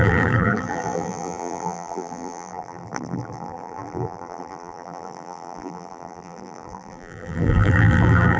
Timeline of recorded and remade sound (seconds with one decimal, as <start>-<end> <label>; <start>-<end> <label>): 0.0-8.4 remade